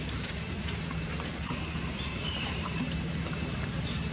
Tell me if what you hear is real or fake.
fake